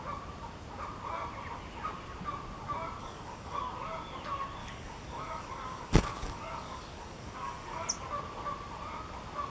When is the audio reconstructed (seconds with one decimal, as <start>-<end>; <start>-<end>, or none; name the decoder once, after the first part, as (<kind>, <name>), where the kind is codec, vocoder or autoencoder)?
3.0-3.6 (codec, DAC); 4.6-7.9